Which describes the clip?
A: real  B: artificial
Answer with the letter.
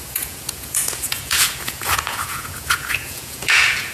B